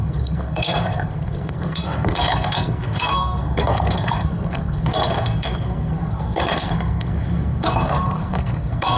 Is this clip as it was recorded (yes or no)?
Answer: no